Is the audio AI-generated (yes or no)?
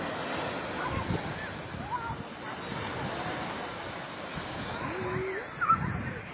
no